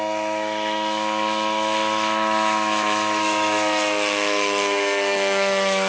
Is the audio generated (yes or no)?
yes